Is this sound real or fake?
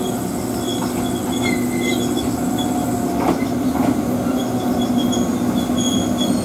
real